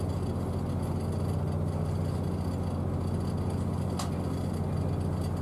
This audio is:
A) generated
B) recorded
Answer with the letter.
B